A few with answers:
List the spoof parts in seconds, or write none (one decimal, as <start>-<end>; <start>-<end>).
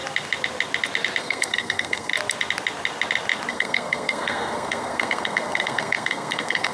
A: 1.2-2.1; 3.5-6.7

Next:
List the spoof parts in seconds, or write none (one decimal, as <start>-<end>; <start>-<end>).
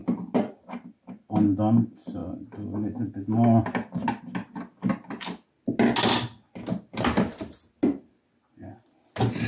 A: none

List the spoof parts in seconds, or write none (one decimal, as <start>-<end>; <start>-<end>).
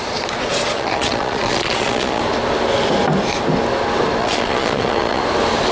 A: 0.7-2.2; 4.2-5.2